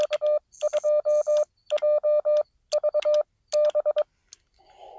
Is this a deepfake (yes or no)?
no